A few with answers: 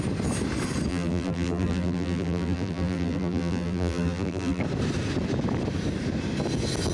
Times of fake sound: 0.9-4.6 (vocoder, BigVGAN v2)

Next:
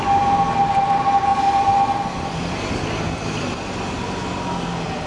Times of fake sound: none

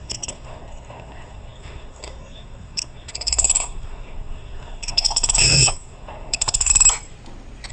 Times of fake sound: 0.0-6.7 (codec, SNAC)

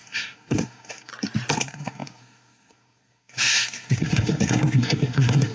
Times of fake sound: 0.0-1.1 (codec, SNAC); 1.6-5.5

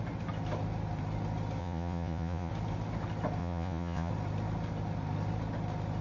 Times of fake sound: 1.6-2.5 (vocoder, Vocos); 3.4-4.1

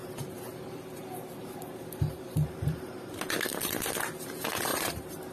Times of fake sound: 0.0-3.1 (vocoder, BigVGAN v2); 3.5-4.0; 4.7-5.3

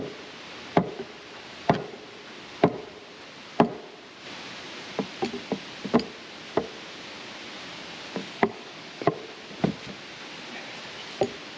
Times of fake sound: 8.2-9.1 (codec, DAC)

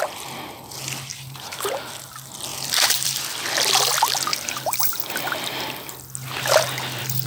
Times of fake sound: 1.1-1.9 (vocoder, BigVGAN v2); 2.5-3.2; 4.3-4.9